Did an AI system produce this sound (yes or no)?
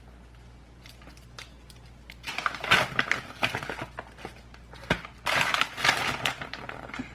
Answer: no